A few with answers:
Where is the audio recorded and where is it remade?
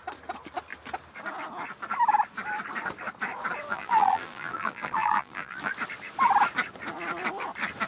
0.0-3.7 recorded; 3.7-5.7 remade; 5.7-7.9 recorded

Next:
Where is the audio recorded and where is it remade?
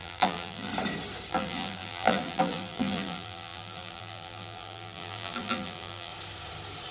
0.0-0.7 remade; 0.7-1.3 recorded; 1.3-6.1 remade; 6.1-6.9 recorded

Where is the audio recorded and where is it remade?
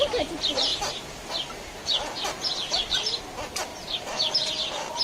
0.0-0.7 remade; 0.7-3.2 recorded; 3.2-5.0 remade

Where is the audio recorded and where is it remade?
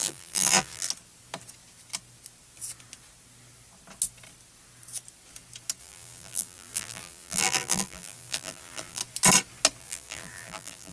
0.0-0.8 remade; 0.8-5.8 recorded; 5.8-9.0 remade; 9.0-9.8 recorded; 9.8-10.9 remade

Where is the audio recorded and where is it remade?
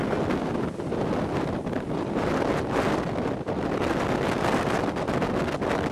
0.0-1.3 recorded; 1.3-2.5 remade; 2.5-5.9 recorded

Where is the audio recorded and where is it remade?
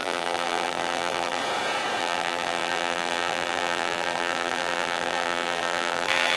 0.0-1.4 remade; 1.4-2.0 recorded; 2.0-6.4 remade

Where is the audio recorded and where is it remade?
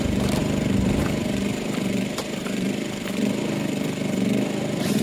0.0-5.0 remade